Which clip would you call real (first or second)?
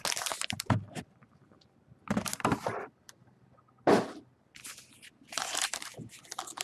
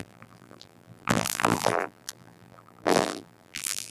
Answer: first